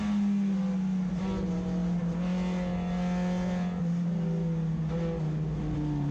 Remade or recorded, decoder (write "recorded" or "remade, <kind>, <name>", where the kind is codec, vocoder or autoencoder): recorded